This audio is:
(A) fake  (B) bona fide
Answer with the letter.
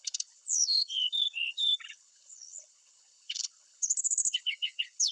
A